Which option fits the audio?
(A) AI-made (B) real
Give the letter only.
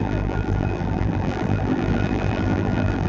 A